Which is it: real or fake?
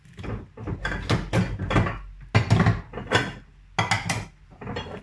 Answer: real